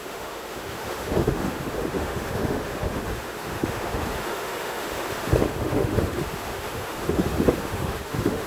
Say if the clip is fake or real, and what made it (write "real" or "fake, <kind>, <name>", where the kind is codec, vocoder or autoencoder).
fake, autoencoder, DAC-VAE